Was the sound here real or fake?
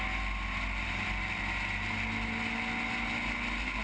real